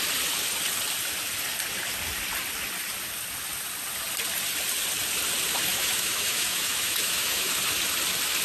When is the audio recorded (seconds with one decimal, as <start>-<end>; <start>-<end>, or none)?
0.0-5.7; 7.5-8.4